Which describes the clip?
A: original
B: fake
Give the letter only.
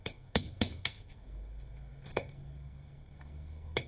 B